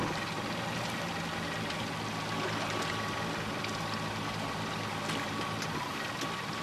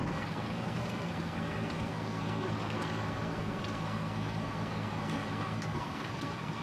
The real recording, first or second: first